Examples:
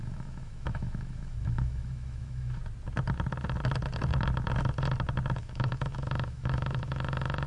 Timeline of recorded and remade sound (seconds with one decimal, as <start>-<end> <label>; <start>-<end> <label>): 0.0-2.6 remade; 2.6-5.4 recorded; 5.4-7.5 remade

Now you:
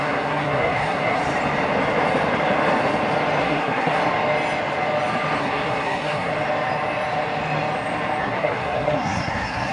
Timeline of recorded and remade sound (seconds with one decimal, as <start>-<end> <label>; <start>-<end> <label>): 0.0-1.2 remade; 1.2-3.4 recorded; 3.4-4.0 remade; 4.0-5.4 recorded; 5.4-6.3 remade; 6.3-8.2 recorded; 8.2-9.7 remade

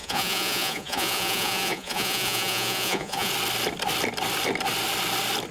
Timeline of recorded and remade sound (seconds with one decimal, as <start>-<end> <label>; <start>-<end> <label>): 0.0-3.3 remade; 3.3-5.5 recorded

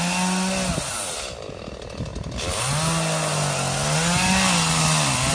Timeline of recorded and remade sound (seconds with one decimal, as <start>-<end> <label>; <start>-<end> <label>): 0.0-5.3 recorded